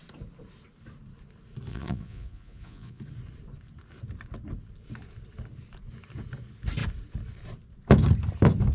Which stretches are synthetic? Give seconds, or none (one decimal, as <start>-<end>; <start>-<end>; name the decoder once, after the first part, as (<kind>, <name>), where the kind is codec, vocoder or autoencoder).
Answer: 1.7-3.0 (vocoder, Vocos)